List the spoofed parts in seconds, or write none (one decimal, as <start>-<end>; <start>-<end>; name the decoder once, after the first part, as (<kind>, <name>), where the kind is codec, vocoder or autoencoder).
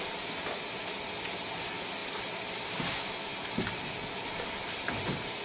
none